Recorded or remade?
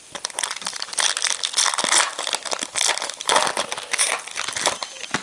recorded